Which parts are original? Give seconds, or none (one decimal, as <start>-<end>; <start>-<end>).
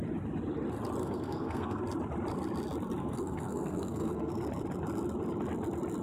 0.0-1.0; 1.8-3.0; 4.3-6.0